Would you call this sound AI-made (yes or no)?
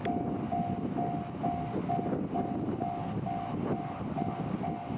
no